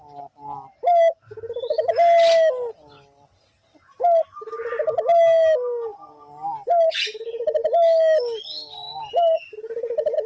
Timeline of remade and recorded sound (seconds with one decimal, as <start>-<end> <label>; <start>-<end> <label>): 0.0-10.3 recorded